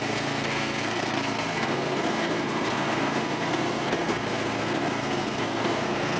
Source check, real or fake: fake